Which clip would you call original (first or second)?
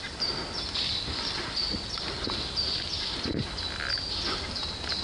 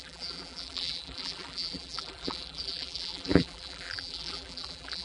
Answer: first